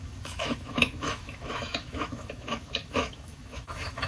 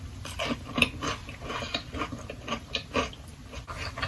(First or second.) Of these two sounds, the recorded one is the second